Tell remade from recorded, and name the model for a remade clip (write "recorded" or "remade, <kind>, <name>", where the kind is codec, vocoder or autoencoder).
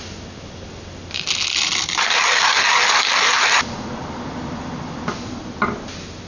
recorded